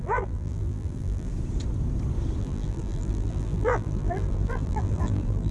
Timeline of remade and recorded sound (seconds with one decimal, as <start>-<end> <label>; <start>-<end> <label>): 0.0-1.3 remade; 1.3-2.4 recorded; 2.4-5.5 remade